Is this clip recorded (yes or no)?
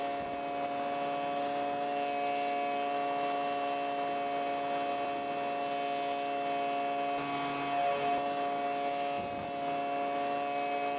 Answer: yes